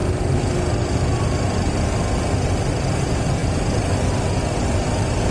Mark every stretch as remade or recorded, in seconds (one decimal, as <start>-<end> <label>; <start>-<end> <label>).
0.0-5.3 recorded